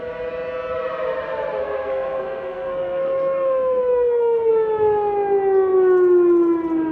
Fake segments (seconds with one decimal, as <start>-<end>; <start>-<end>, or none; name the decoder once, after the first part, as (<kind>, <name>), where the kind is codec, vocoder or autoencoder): 1.6-4.5 (codec, SNAC)